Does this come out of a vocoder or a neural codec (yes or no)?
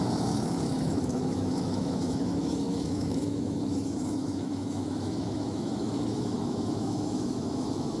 yes